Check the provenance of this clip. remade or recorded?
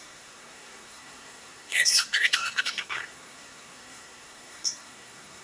remade